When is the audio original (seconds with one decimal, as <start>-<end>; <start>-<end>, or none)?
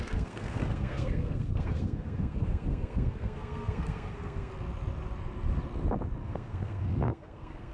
4.5-6.3